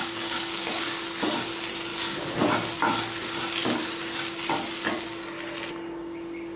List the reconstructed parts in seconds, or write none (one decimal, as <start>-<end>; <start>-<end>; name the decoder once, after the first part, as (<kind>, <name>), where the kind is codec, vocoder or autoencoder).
0.0-0.8 (codec, DAC)